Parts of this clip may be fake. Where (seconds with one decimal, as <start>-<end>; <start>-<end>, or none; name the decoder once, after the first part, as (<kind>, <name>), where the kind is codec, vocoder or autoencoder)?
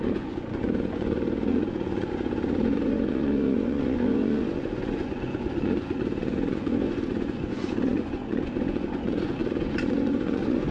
0.0-10.7 (vocoder, Vocos)